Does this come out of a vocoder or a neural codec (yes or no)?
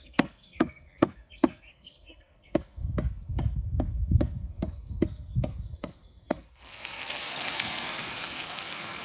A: yes